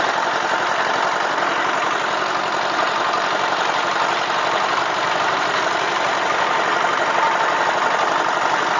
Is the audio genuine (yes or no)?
yes